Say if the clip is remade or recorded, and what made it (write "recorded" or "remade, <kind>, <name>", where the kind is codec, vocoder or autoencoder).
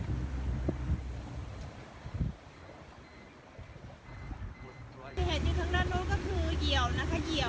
remade, vocoder, BigVGAN v2